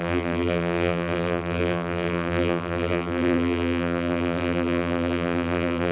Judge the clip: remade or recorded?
remade